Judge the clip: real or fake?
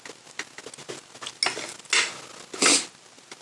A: real